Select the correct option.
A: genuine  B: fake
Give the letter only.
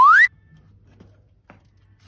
A